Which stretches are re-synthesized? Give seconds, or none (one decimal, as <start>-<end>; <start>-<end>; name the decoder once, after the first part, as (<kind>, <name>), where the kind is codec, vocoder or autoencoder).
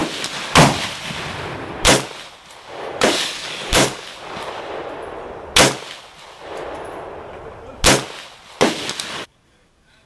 2.7-4.1 (codec, DAC); 9.1-10.1